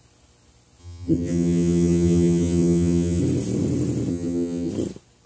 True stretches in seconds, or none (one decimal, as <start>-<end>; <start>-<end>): 0.0-0.8; 3.2-4.1; 4.7-5.3